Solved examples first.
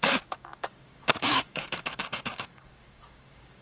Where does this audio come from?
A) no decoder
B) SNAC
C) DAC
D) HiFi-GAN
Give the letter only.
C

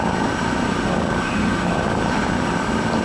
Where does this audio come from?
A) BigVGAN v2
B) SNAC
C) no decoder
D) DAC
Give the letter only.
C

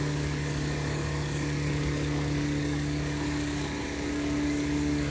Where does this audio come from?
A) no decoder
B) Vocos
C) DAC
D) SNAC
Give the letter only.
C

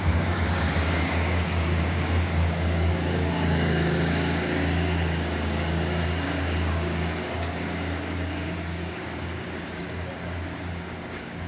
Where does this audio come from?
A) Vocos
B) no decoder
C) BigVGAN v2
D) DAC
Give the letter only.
D